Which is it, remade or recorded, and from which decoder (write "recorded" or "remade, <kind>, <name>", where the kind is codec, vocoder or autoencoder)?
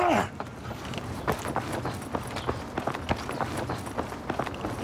recorded